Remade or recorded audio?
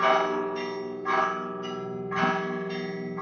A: recorded